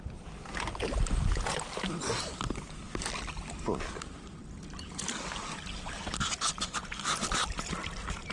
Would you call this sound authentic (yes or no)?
yes